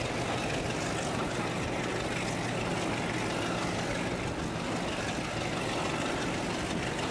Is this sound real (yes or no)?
yes